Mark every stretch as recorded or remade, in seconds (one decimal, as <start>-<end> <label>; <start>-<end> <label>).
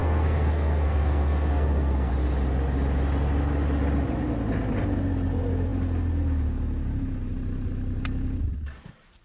0.0-2.1 remade; 2.1-9.2 recorded